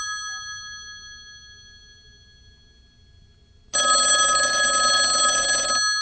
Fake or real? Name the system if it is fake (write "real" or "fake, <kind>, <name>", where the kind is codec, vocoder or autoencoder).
real